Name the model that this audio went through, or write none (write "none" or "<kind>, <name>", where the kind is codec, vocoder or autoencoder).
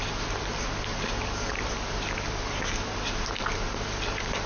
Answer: none